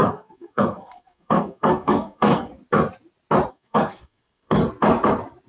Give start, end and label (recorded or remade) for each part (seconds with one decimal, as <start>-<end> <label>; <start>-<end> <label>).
0.0-2.5 remade; 2.5-3.5 recorded; 3.5-4.6 remade; 4.6-5.5 recorded